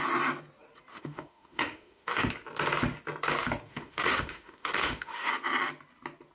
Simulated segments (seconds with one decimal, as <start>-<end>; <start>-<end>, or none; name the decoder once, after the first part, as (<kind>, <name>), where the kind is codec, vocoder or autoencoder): 0.9-2.3 (autoencoder, DAC-VAE); 3.7-5.3

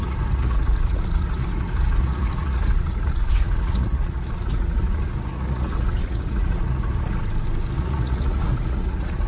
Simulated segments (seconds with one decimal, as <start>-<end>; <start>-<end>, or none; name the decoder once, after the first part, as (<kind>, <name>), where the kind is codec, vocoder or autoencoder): 0.0-7.2 (vocoder, Vocos); 7.8-9.3